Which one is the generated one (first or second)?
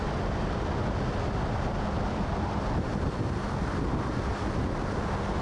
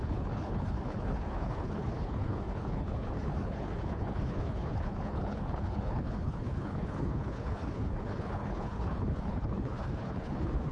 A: second